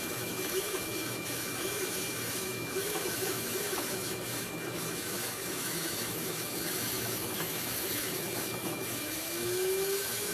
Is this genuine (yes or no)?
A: no